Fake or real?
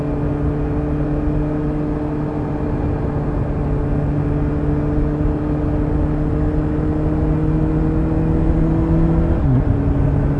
real